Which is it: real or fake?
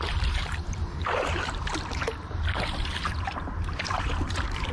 fake